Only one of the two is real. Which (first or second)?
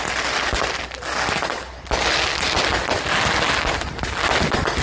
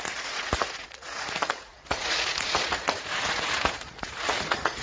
first